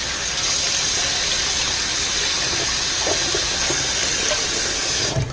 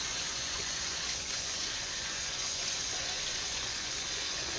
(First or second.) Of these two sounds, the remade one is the second